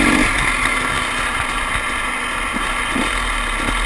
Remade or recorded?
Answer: recorded